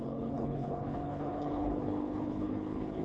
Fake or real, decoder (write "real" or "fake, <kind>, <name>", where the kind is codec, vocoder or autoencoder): fake, codec, HILCodec